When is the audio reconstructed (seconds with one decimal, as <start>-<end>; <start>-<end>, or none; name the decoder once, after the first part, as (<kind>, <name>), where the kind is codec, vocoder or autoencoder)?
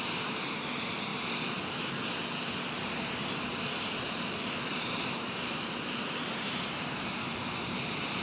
1.1-2.0 (vocoder, BigVGAN v2); 4.7-8.2